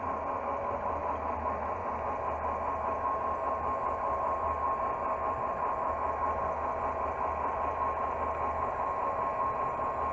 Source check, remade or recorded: recorded